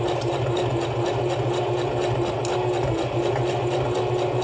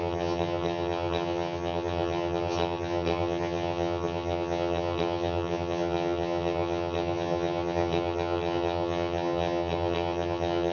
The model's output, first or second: second